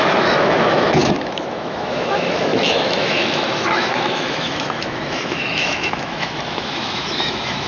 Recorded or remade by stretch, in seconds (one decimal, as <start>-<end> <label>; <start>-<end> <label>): 0.0-7.7 remade